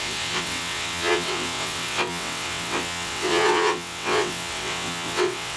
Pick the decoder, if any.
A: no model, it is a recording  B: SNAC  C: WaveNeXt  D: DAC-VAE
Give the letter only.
C